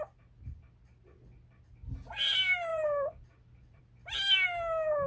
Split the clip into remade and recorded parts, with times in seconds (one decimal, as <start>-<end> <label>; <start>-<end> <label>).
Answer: 0.0-2.7 recorded; 2.7-3.8 remade; 3.8-5.1 recorded